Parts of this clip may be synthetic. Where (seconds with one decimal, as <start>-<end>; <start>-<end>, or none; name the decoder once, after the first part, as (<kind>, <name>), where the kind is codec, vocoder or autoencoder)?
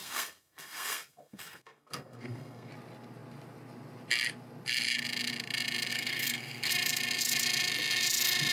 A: 0.0-2.7 (codec, SNAC); 5.9-6.7